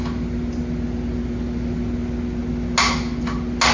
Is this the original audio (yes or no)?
yes